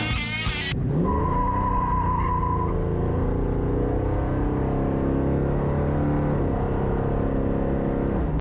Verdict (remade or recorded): recorded